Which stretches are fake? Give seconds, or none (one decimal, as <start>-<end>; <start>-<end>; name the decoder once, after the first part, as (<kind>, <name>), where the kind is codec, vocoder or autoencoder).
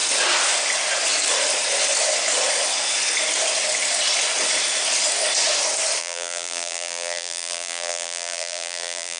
6.0-9.2 (vocoder, BigVGAN v2)